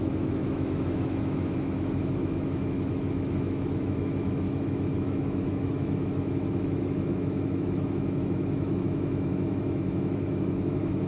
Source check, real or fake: fake